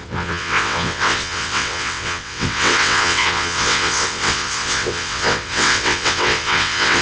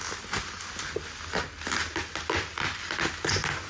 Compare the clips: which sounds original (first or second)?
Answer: second